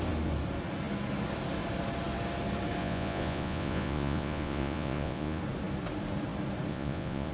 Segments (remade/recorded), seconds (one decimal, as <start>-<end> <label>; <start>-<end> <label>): 0.0-2.8 recorded; 2.8-5.4 remade; 5.4-6.7 recorded; 6.7-7.3 remade